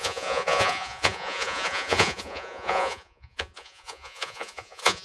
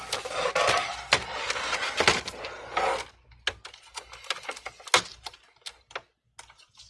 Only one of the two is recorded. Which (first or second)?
second